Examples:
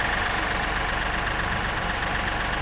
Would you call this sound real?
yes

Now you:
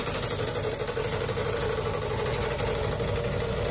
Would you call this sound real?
yes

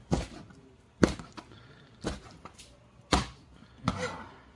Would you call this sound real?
yes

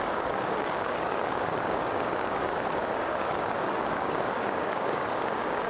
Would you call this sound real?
no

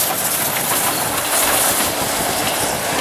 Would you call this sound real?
yes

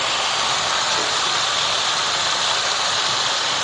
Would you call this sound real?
yes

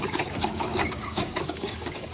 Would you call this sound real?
no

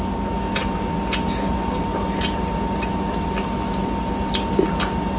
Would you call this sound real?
yes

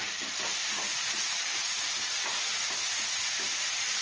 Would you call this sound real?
yes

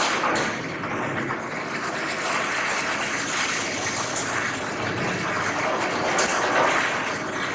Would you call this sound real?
yes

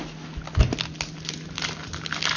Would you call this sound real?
yes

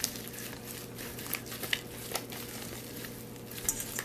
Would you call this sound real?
yes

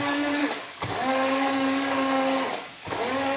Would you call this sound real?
no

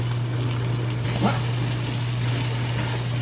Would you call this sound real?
yes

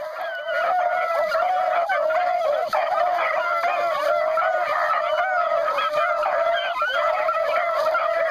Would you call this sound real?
yes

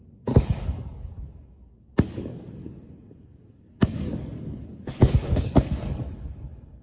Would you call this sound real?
no